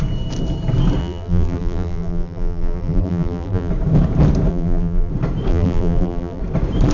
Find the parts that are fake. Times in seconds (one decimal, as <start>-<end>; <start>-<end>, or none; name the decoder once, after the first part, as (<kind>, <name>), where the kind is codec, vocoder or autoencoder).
1.0-3.7 (vocoder, BigVGAN v2); 4.5-5.1; 5.5-6.4